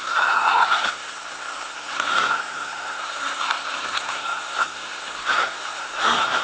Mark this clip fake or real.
fake